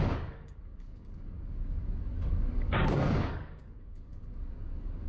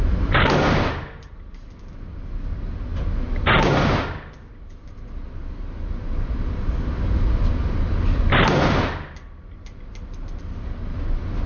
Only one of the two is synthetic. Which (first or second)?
first